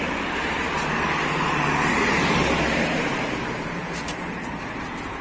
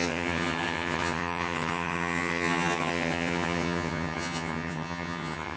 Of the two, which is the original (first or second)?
first